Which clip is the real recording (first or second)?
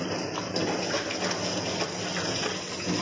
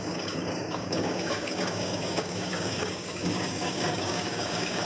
first